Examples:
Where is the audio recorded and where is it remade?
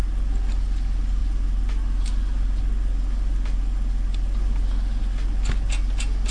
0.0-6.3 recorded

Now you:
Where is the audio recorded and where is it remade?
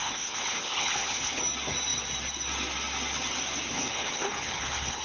0.0-1.4 remade; 1.4-3.7 recorded; 3.7-5.0 remade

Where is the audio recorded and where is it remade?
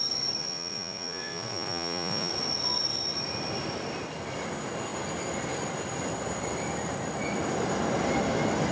0.0-0.4 recorded; 0.4-2.3 remade; 2.3-8.7 recorded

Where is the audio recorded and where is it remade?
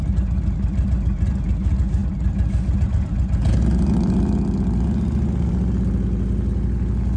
0.0-7.2 recorded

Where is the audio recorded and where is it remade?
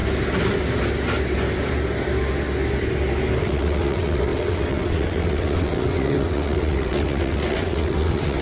0.0-3.4 recorded; 3.4-8.4 remade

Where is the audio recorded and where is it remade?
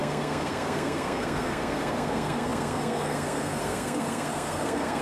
0.0-5.0 remade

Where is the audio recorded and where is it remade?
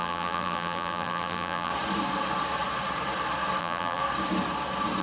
0.0-1.7 remade; 1.7-3.6 recorded; 3.6-4.0 remade; 4.0-5.0 recorded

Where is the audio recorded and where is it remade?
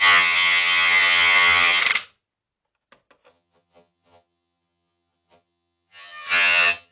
0.0-1.8 remade; 1.8-3.3 recorded; 3.3-6.9 remade